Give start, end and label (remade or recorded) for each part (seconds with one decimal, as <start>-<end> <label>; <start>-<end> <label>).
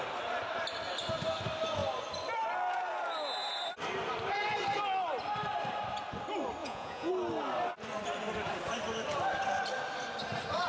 0.0-6.6 recorded; 6.6-7.1 remade; 7.1-10.7 recorded